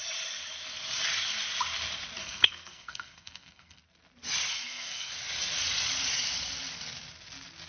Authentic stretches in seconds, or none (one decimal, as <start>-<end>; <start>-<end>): 0.0-2.2; 3.8-4.5; 5.1-7.7